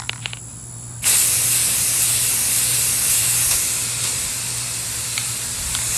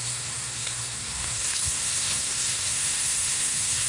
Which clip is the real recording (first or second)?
first